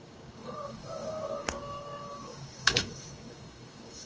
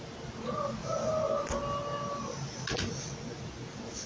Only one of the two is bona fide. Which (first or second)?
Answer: second